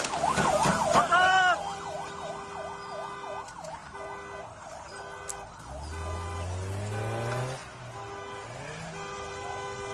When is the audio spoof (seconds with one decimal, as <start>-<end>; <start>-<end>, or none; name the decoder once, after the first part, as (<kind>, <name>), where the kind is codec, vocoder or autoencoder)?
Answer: none